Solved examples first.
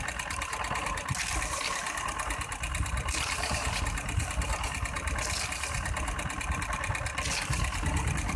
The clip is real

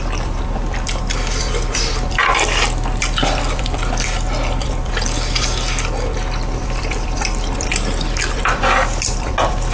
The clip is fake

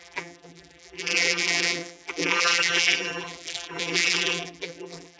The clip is fake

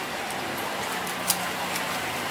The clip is real